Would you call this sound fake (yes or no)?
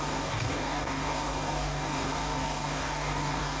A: yes